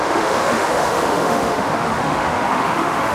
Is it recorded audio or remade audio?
remade